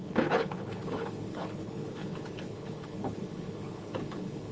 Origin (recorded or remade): remade